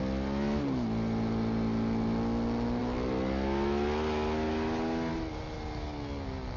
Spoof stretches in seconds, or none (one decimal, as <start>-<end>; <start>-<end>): none